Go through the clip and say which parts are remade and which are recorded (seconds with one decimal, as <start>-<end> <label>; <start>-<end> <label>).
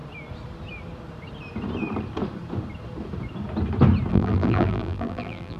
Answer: 0.0-4.1 recorded; 4.1-5.6 remade